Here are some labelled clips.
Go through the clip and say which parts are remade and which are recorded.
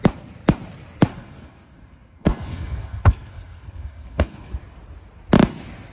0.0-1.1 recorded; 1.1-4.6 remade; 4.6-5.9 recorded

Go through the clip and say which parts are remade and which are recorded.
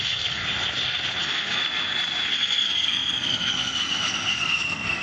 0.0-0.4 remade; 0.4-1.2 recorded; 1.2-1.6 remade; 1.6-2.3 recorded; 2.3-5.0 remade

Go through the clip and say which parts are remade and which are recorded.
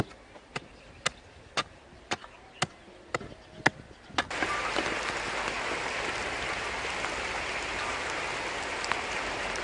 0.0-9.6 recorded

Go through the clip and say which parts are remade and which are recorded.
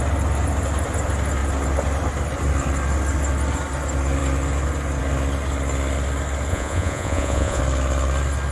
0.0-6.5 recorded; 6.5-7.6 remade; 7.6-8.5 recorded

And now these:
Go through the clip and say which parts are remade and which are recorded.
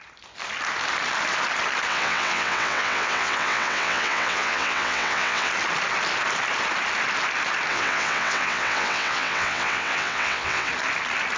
0.0-1.9 recorded; 1.9-5.5 remade; 5.5-7.7 recorded; 7.7-10.7 remade; 10.7-11.4 recorded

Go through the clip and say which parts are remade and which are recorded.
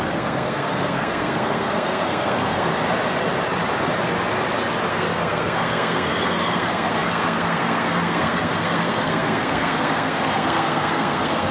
0.0-2.7 remade; 2.7-4.9 recorded; 4.9-11.5 remade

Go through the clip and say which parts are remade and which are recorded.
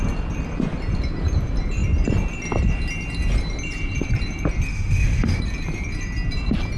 0.0-4.7 recorded; 4.7-5.4 remade; 5.4-6.8 recorded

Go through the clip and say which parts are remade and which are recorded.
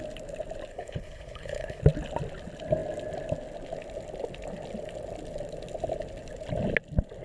0.0-0.7 recorded; 0.7-1.8 remade; 1.8-7.2 recorded